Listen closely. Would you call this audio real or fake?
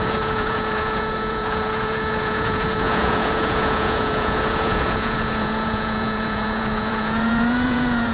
fake